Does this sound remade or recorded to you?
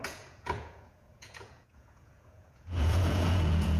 remade